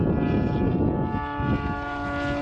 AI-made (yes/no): no